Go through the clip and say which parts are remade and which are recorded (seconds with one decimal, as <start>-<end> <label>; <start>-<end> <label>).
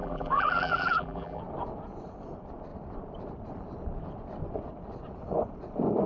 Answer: 0.0-1.4 remade; 1.4-6.1 recorded